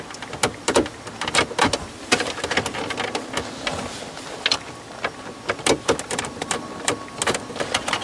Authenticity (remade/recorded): recorded